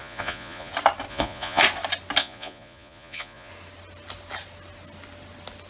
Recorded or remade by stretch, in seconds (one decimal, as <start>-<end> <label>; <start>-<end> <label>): 0.0-0.7 remade; 0.7-1.1 recorded; 1.1-1.6 remade; 1.6-2.2 recorded; 2.2-3.5 remade; 3.5-5.7 recorded